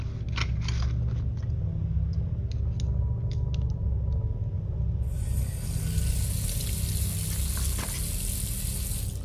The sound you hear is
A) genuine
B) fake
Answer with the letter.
A